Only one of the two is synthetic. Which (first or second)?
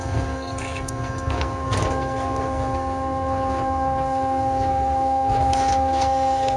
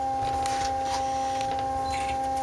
first